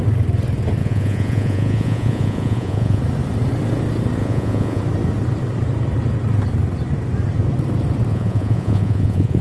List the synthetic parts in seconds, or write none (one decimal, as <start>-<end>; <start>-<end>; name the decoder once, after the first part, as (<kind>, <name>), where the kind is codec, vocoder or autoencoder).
0.8-3.0 (vocoder, Vocos); 4.2-4.8; 8.1-9.4